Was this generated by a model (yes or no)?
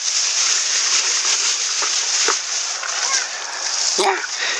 no